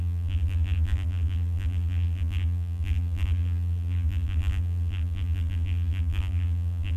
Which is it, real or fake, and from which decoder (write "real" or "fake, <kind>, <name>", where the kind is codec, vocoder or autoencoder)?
fake, vocoder, BigVGAN v2